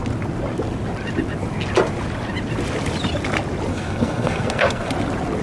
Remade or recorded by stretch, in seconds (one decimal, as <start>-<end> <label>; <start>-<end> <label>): 0.0-3.7 recorded; 3.7-4.9 remade; 4.9-5.4 recorded